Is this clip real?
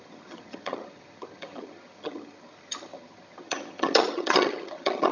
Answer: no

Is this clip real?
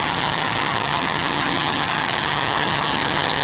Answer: no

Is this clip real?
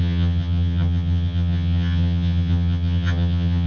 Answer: no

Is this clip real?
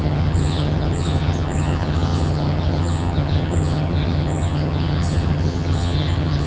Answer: no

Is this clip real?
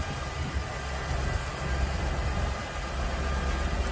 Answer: yes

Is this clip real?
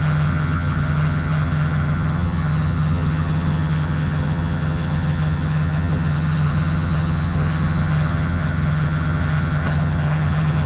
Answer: no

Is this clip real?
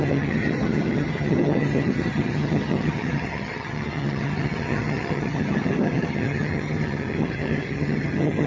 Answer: no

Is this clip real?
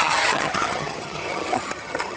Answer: no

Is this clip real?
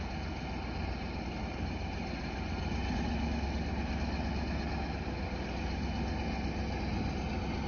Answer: yes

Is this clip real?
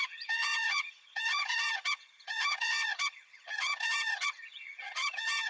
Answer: no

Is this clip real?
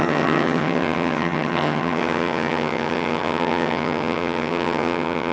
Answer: no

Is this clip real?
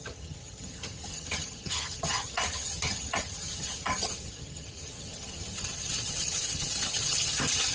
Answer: no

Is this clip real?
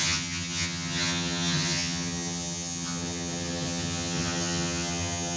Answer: no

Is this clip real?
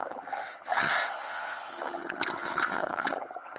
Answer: no